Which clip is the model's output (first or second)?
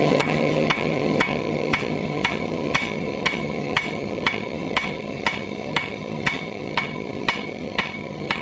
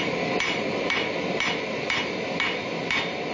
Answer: first